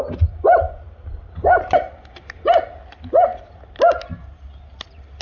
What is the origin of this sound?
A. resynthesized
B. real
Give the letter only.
B